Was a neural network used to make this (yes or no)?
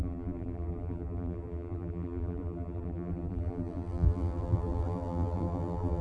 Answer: yes